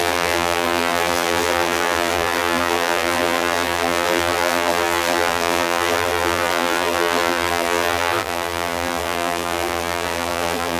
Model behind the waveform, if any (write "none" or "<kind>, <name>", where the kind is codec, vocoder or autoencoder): vocoder, BigVGAN v2